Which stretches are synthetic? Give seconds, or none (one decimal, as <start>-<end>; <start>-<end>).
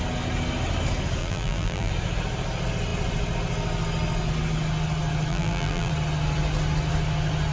1.2-1.9; 5.3-5.9